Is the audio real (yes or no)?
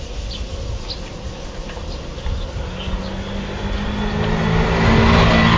yes